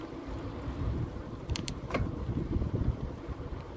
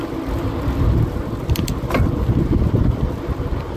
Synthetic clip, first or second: first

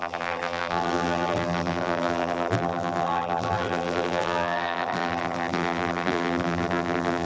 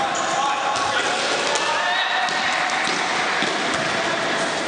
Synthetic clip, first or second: first